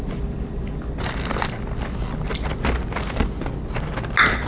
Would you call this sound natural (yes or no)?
yes